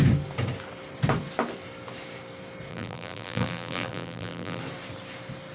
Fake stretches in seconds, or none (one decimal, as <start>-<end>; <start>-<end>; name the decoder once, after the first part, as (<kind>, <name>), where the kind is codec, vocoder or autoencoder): 2.7-4.6 (vocoder, BigVGAN v2)